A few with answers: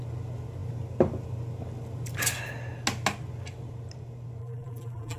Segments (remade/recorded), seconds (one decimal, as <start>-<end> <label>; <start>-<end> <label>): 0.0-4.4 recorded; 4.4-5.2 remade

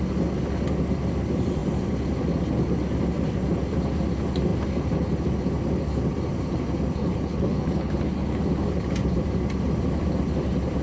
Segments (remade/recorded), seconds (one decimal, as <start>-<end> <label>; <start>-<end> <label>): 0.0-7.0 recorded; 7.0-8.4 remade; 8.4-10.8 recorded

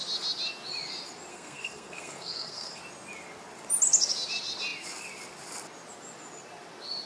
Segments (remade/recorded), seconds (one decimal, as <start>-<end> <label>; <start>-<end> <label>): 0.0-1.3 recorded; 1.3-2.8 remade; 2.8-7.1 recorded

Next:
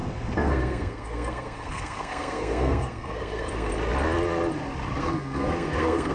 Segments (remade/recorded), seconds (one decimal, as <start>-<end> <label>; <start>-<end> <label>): 0.0-3.7 remade; 3.7-5.0 recorded; 5.0-6.1 remade

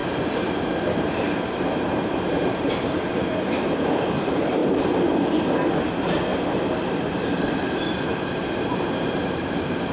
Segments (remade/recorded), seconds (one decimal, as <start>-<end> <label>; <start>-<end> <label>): 0.0-4.6 remade; 4.6-5.7 recorded; 5.7-6.3 remade; 6.3-6.9 recorded; 6.9-9.9 remade

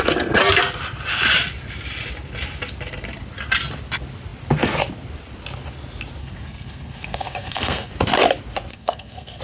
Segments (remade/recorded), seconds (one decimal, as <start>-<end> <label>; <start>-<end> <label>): 0.0-6.2 recorded; 6.2-7.9 remade; 7.9-8.7 recorded; 8.7-9.4 remade

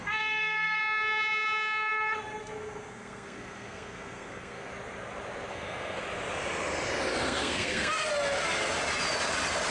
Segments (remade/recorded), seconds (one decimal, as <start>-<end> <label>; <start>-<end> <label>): 0.0-0.8 remade; 0.8-2.4 recorded; 2.4-4.7 remade; 4.7-5.5 recorded; 5.5-6.0 remade; 6.0-7.1 recorded; 7.1-8.1 remade; 8.1-9.7 recorded

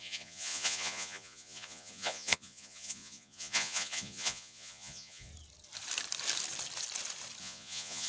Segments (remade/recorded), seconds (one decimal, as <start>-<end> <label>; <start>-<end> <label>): 0.0-5.3 remade; 5.3-7.4 recorded; 7.4-8.1 remade